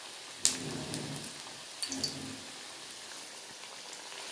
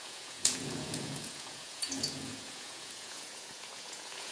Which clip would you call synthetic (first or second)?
second